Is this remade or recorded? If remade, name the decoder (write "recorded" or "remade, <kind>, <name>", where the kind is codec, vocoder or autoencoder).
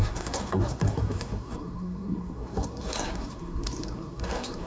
remade, codec, SNAC